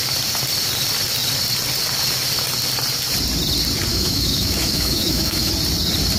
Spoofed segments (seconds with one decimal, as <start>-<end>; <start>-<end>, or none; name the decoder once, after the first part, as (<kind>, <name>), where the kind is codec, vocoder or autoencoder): 3.9-5.5 (autoencoder, DAC-VAE)